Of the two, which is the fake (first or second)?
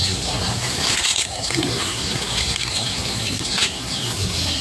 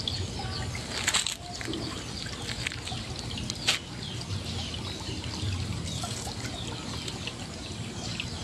first